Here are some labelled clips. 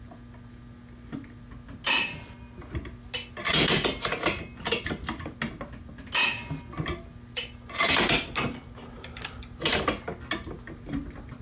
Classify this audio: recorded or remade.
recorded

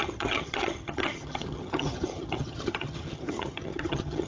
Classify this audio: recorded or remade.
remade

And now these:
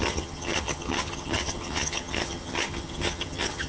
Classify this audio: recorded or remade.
remade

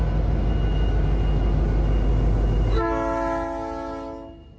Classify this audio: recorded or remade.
recorded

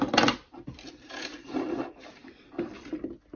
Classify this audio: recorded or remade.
recorded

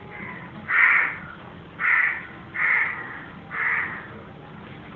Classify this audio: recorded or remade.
recorded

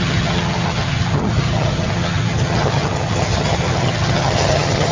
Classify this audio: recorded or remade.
remade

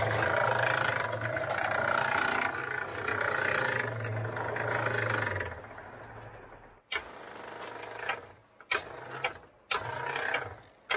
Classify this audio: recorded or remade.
recorded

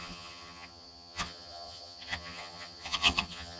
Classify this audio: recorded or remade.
remade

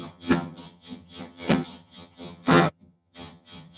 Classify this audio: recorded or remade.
remade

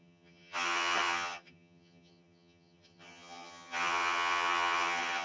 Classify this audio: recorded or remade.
remade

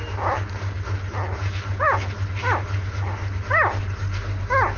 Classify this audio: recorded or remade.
recorded